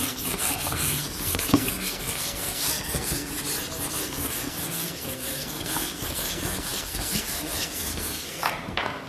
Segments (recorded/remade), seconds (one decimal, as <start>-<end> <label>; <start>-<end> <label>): 0.0-3.3 remade; 3.3-3.9 recorded; 3.9-9.1 remade